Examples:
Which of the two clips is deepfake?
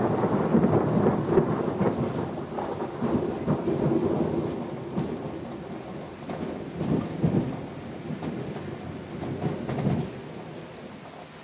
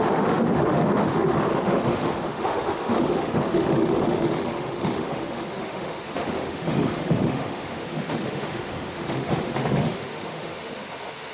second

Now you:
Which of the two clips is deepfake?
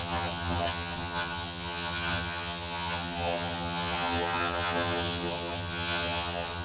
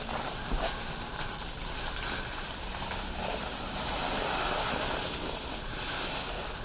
first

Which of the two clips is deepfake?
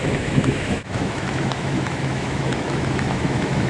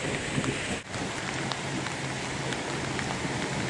first